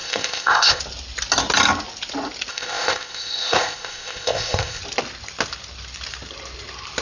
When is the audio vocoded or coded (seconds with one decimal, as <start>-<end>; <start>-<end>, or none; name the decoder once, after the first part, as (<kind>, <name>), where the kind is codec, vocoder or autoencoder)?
0.0-0.8 (codec, ZipCodec); 2.5-4.8